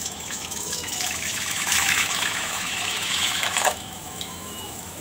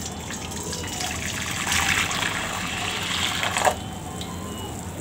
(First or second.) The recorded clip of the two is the second